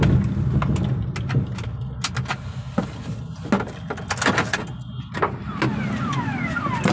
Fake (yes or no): no